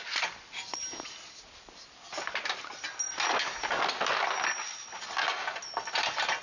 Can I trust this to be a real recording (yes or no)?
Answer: yes